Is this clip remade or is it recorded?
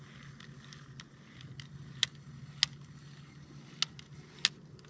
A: recorded